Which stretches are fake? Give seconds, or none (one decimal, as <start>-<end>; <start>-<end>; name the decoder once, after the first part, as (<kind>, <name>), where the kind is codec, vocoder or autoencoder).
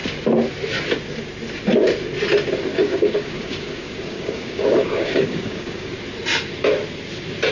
2.7-5.9 (codec, DAC)